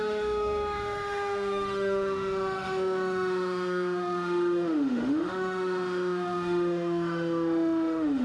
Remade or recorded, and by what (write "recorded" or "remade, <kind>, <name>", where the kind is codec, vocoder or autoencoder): remade, autoencoder, DAC-VAE